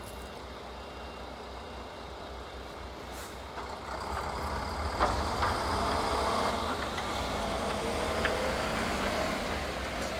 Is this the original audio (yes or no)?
yes